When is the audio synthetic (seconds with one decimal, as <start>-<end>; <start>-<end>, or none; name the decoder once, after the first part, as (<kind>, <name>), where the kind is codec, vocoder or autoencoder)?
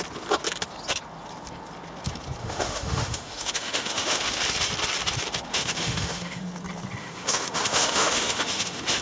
2.4-4.4 (autoencoder, DAC-VAE); 5.5-6.4; 7.0-9.0